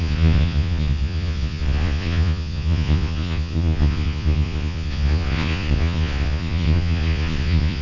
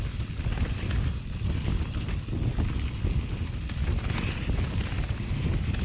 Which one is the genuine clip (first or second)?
second